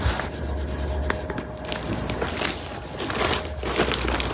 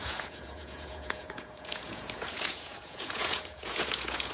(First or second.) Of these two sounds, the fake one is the second